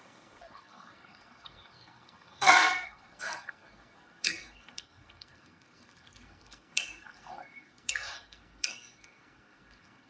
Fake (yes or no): yes